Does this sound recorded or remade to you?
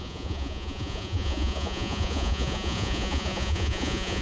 remade